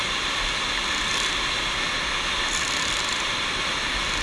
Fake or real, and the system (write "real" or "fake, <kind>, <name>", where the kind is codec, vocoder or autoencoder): real